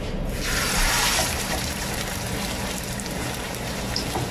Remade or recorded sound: remade